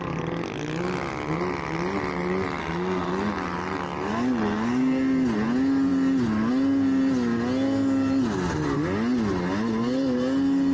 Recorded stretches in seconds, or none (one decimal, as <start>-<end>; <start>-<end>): 0.0-2.6; 3.1-10.7